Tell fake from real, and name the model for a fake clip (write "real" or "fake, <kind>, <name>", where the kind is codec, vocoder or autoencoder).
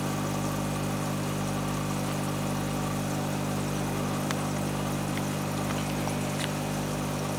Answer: real